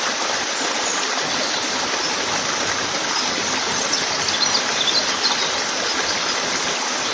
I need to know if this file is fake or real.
real